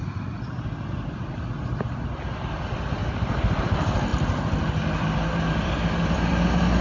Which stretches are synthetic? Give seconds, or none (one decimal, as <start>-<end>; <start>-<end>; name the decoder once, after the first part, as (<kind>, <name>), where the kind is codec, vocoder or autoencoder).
3.0-3.6 (vocoder, BigVGAN v2); 4.1-6.8